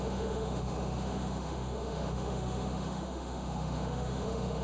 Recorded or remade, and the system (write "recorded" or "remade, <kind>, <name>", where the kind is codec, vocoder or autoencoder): remade, autoencoder, DAC-VAE